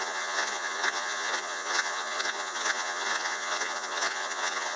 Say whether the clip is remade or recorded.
remade